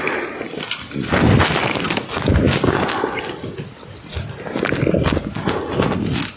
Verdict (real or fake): real